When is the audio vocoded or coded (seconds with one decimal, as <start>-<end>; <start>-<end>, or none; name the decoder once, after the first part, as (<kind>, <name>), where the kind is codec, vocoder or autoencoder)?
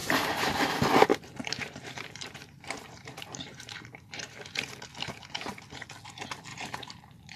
0.0-0.7 (vocoder, BigVGAN v2); 1.1-4.3; 6.5-7.4